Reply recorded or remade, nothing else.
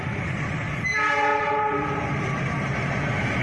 remade